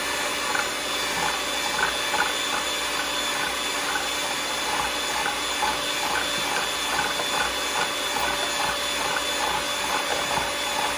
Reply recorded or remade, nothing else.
recorded